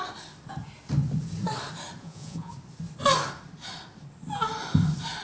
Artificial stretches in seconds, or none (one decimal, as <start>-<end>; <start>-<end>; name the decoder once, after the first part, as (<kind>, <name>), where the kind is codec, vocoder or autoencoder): 2.0-2.5 (vocoder, Vocos)